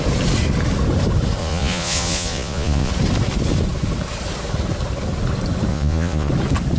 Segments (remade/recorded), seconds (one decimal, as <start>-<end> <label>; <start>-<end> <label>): 0.0-1.4 recorded; 1.4-2.9 remade; 2.9-5.7 recorded; 5.7-6.3 remade; 6.3-6.8 recorded